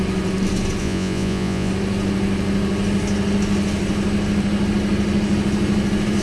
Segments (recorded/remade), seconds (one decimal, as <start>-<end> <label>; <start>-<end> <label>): 0.0-0.8 recorded; 0.8-1.7 remade; 1.7-6.2 recorded